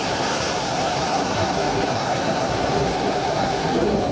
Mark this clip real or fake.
fake